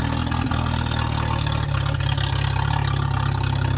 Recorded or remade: recorded